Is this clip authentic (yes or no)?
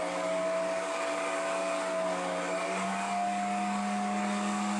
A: no